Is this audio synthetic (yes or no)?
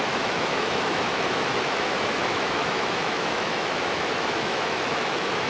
yes